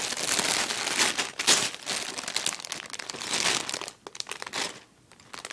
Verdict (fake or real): real